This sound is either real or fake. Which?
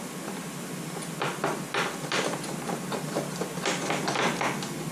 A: real